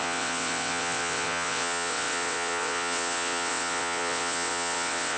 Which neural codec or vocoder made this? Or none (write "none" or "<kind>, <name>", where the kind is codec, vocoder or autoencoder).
vocoder, WaveNeXt